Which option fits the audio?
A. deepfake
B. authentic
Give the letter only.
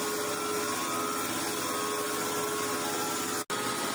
B